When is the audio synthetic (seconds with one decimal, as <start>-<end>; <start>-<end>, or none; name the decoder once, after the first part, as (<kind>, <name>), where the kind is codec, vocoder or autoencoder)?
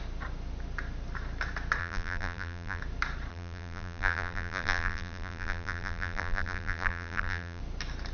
1.8-2.8 (vocoder, BigVGAN v2); 3.3-7.6